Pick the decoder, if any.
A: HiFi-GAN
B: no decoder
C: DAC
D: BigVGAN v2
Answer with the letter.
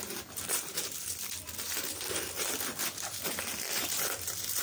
D